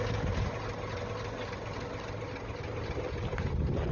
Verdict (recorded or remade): recorded